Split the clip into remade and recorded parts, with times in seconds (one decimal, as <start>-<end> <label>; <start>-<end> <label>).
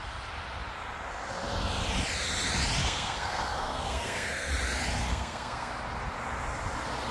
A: 0.0-2.8 recorded; 2.8-4.5 remade; 4.5-5.1 recorded; 5.1-5.7 remade; 5.7-7.1 recorded